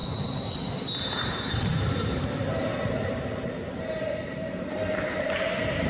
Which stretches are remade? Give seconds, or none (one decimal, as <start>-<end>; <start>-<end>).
1.0-5.9